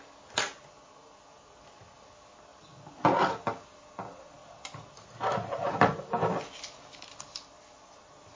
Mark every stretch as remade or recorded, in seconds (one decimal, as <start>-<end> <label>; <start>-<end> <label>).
0.0-8.4 recorded